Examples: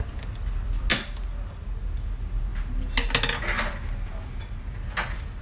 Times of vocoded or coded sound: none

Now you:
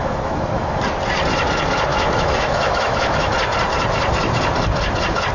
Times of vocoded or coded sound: 0.0-0.8 (autoencoder, DAC-VAE); 1.9-3.3

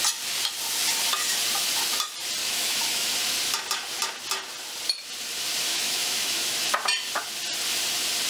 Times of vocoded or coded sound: 2.4-3.1 (autoencoder, DAC-VAE); 5.7-6.7